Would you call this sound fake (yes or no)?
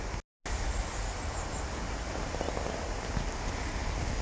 no